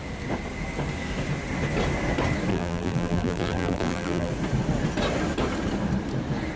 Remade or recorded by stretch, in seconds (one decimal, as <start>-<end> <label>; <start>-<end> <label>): 0.0-2.5 recorded; 2.5-4.3 remade; 4.3-6.6 recorded